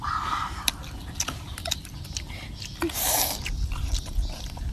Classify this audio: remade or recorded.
recorded